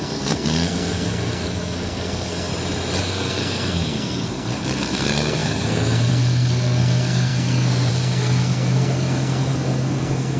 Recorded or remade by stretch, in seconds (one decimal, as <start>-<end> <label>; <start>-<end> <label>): 0.0-2.5 remade; 2.5-3.0 recorded; 3.0-10.4 remade